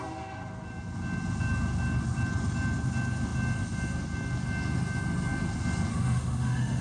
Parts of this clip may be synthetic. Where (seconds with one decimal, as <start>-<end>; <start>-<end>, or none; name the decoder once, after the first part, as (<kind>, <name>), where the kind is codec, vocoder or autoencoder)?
5.9-6.8 (autoencoder, DAC-VAE)